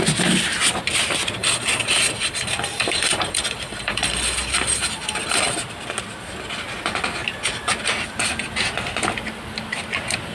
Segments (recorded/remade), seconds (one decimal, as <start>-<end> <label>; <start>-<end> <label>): 0.0-1.4 recorded; 1.4-5.6 remade; 5.6-10.3 recorded